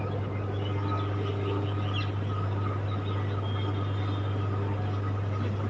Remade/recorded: recorded